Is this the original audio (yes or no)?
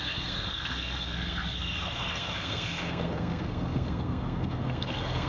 no